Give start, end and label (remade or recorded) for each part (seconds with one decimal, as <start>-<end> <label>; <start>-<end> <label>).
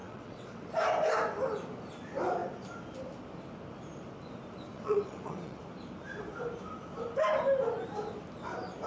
0.0-0.7 remade; 0.7-4.7 recorded; 4.7-5.6 remade; 5.6-8.9 recorded